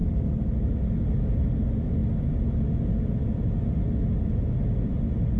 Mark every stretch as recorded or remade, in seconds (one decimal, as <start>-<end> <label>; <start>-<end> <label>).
0.0-0.8 remade; 0.8-5.4 recorded